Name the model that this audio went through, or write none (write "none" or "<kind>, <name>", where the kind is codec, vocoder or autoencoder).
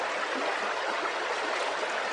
none